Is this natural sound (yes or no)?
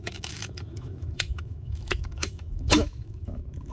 no